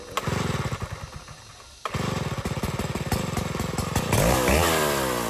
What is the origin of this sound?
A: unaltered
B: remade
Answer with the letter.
A